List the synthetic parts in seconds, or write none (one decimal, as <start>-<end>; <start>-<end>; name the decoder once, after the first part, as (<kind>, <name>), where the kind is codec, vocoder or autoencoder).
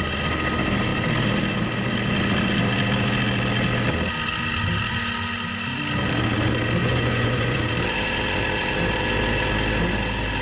6.8-7.6 (vocoder, Vocos)